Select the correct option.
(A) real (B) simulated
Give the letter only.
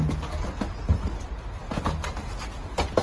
A